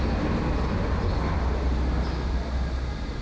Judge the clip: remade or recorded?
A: recorded